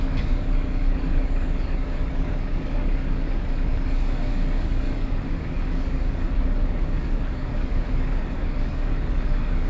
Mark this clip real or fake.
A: fake